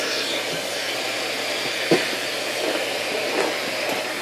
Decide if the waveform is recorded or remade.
recorded